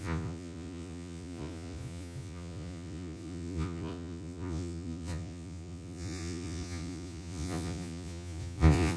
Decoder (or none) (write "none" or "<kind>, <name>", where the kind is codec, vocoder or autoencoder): vocoder, Vocos